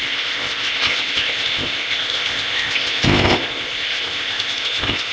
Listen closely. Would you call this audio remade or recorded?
remade